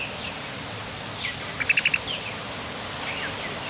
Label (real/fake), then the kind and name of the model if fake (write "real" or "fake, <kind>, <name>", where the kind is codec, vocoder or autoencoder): real